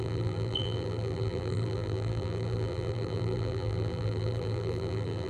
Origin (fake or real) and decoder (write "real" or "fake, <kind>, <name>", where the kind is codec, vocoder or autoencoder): fake, vocoder, BigVGAN v2